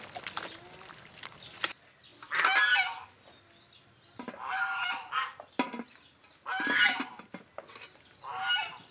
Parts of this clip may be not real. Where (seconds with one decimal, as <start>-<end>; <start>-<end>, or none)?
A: none